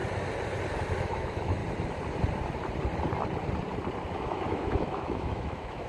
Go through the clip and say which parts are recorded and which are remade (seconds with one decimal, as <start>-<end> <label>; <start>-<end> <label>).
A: 0.0-1.0 recorded; 1.0-1.6 remade; 1.6-4.1 recorded; 4.1-5.9 remade